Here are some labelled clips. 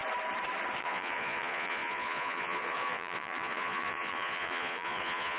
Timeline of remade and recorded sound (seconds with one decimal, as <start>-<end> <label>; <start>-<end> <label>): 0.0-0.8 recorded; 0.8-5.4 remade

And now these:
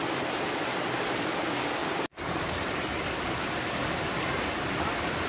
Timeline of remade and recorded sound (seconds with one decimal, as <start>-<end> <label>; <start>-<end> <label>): 0.0-1.8 recorded; 1.8-2.5 remade; 2.5-5.3 recorded

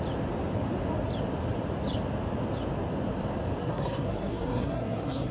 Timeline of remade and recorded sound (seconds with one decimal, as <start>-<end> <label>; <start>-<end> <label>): 0.0-3.6 recorded; 3.6-5.3 remade

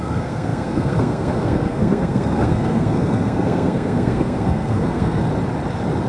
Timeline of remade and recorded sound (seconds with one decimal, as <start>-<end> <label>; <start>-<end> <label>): 0.0-5.2 remade; 5.2-6.1 recorded

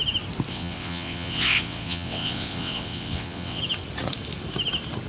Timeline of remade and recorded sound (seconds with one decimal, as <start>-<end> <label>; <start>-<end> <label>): 0.0-0.5 recorded; 0.5-3.6 remade; 3.6-5.1 recorded

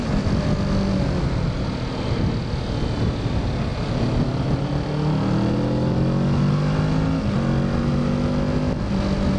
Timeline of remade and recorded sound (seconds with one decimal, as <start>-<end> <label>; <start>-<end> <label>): 0.0-9.4 recorded

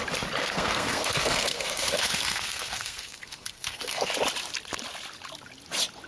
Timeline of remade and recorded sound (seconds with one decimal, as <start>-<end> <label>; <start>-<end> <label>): 0.0-0.4 recorded; 0.4-4.1 remade; 4.1-6.1 recorded

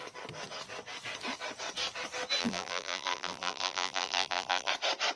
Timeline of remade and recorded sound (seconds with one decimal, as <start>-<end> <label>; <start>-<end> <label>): 0.0-2.4 recorded; 2.4-4.7 remade; 4.7-5.2 recorded